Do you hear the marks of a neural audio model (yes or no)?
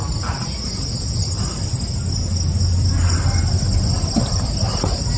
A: no